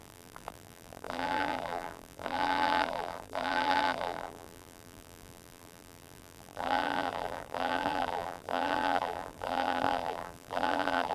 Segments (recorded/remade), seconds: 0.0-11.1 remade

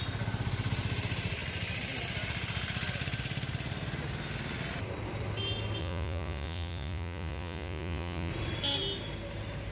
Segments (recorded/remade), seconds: 0.0-5.8 recorded; 5.8-8.3 remade; 8.3-9.7 recorded

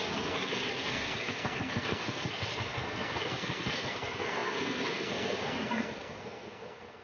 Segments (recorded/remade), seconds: 0.0-7.0 remade

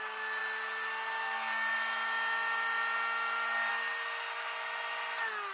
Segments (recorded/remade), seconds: 0.0-5.5 recorded

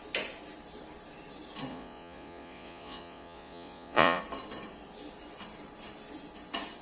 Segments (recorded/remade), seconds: 0.0-1.7 recorded; 1.7-4.2 remade; 4.2-6.8 recorded